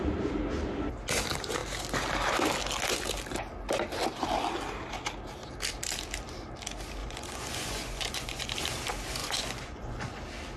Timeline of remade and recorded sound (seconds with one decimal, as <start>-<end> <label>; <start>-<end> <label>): 0.0-7.0 recorded; 7.0-8.5 remade; 8.5-9.2 recorded; 9.2-10.2 remade; 10.2-10.6 recorded